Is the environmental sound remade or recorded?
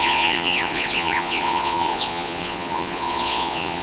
remade